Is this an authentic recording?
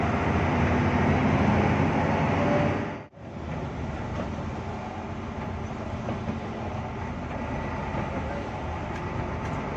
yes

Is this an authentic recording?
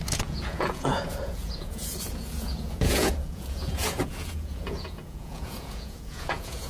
no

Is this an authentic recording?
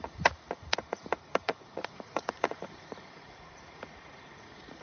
no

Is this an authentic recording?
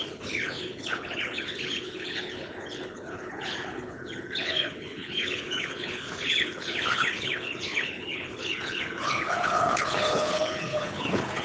no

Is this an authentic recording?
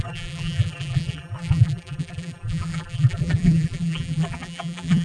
no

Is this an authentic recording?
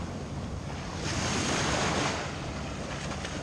yes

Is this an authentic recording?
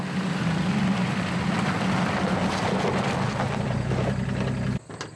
yes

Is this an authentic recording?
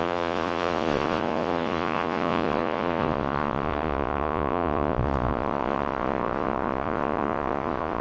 no